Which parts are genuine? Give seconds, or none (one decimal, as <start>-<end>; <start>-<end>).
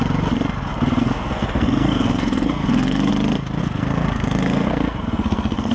0.0-1.0; 3.1-3.6